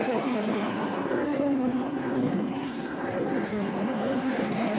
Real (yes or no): no